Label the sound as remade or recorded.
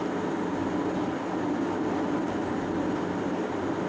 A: recorded